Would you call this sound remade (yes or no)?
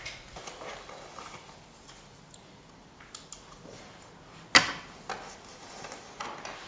no